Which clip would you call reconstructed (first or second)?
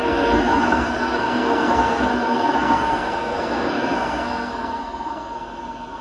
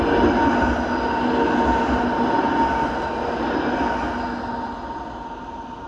first